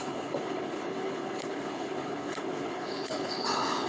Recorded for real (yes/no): no